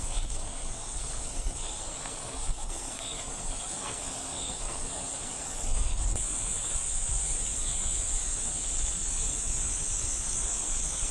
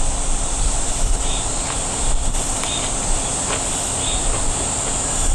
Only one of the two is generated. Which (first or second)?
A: first